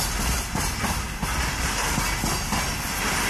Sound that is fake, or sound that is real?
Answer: real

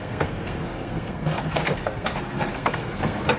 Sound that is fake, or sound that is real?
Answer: fake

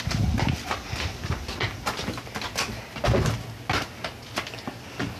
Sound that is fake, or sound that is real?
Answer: real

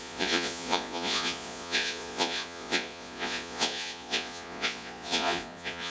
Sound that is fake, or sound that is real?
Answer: fake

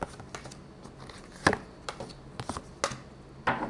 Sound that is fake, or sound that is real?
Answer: real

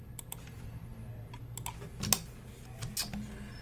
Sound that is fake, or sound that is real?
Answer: real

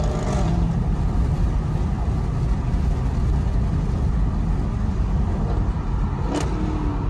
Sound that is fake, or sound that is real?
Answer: real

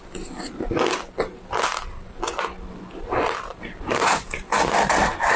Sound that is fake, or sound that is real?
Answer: real